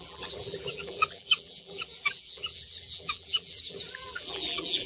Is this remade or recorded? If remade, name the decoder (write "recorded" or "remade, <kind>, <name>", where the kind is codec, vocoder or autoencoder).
remade, vocoder, BigVGAN v2